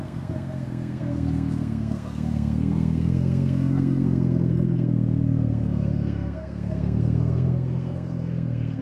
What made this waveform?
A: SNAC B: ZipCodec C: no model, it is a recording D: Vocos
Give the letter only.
A